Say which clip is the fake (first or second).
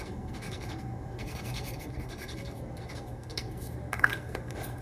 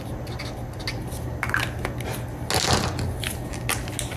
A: first